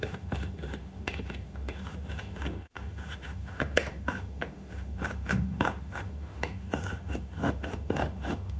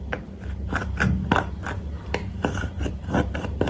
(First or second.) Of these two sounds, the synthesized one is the first